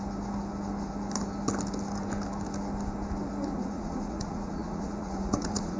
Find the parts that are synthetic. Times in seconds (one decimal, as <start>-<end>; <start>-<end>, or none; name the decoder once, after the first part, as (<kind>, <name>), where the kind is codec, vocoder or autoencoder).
3.5-5.8 (vocoder, Vocos)